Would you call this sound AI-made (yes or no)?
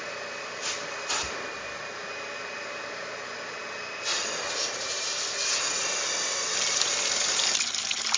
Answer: no